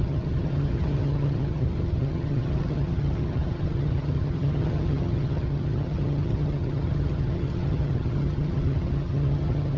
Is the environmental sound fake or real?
fake